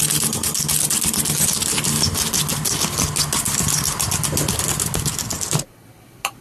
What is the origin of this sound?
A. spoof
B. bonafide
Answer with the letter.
B